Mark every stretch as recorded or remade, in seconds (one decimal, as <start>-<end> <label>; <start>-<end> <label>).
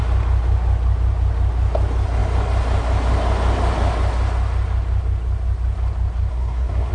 0.0-6.3 recorded; 6.3-6.9 remade